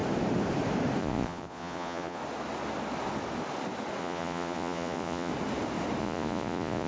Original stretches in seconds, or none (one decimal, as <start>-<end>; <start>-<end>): 0.0-1.0; 2.2-4.0; 5.3-6.0